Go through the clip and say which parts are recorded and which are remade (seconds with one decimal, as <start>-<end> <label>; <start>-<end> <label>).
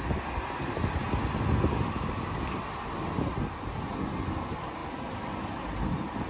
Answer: 0.0-6.3 recorded